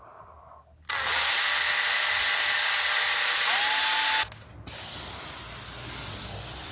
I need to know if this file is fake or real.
real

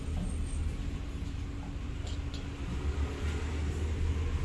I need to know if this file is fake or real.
real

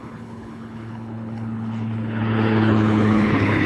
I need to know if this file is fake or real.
fake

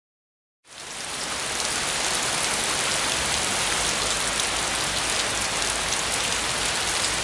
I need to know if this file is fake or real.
real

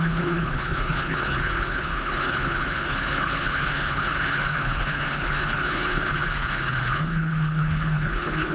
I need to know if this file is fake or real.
fake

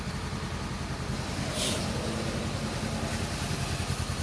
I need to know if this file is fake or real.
real